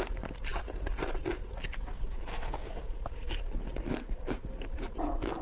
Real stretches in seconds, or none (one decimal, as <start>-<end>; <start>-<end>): 0.0-2.3; 2.8-5.4